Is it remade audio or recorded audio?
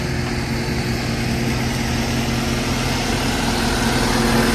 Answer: recorded